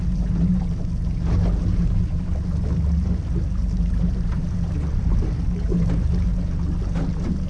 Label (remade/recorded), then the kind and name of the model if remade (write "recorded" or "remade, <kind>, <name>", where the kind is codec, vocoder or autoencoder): recorded